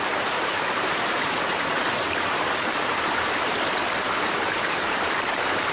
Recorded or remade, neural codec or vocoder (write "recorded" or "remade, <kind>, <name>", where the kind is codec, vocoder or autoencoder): remade, vocoder, BigVGAN v2